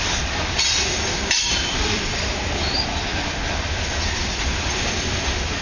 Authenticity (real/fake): fake